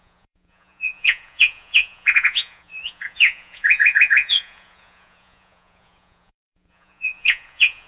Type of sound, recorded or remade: remade